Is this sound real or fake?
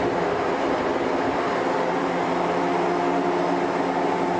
real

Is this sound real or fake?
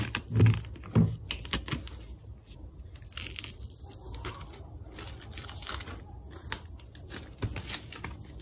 real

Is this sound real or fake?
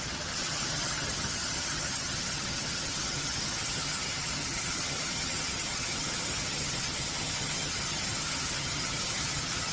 fake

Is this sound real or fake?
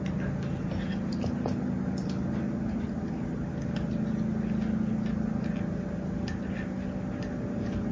real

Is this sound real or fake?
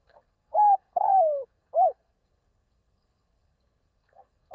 fake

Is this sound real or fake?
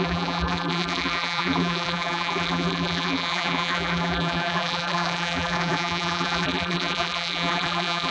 fake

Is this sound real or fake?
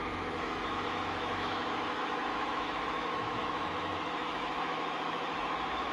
fake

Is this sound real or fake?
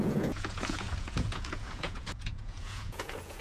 fake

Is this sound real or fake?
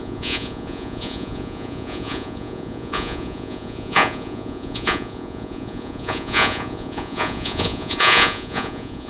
fake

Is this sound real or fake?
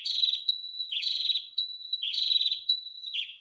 fake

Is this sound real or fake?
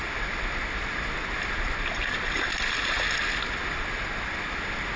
real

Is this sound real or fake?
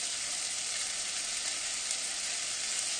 real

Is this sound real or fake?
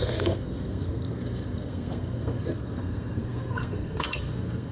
fake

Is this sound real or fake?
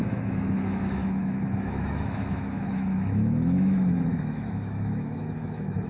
fake